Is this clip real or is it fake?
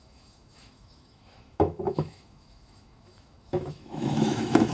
fake